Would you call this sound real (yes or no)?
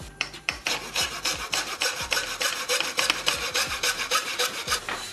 no